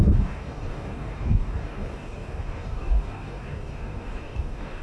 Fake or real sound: fake